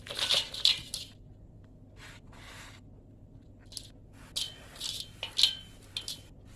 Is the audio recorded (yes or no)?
yes